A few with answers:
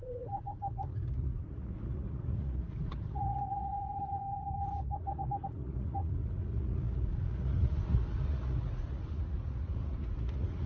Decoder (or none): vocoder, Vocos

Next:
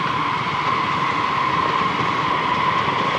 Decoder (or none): none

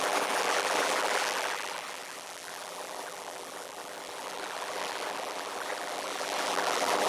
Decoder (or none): vocoder, BigVGAN v2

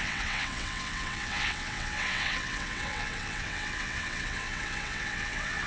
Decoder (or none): vocoder, WaveNeXt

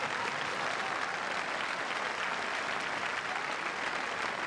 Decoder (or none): none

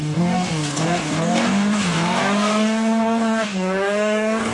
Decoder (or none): codec, DAC